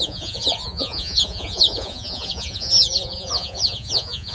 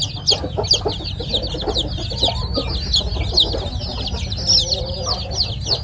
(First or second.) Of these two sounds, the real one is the second